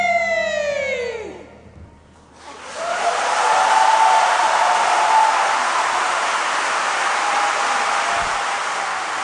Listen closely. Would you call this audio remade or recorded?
recorded